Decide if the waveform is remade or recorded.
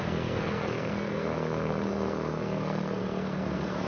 remade